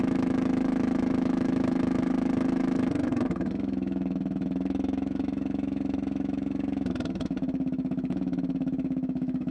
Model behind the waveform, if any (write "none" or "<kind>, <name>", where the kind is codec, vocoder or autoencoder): autoencoder, DAC-VAE